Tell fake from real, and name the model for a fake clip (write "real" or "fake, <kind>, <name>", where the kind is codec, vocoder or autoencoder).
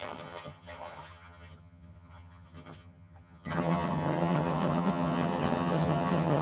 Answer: fake, vocoder, HiFi-GAN